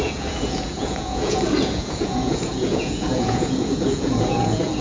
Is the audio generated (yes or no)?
yes